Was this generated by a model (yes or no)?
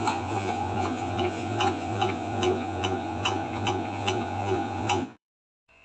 yes